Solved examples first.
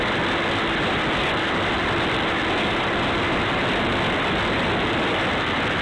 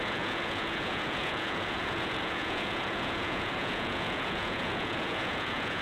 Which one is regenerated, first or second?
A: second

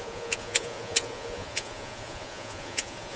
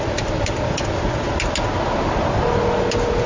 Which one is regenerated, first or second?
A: first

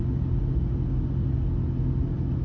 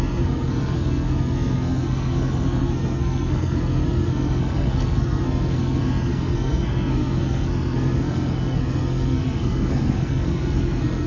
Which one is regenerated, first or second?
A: second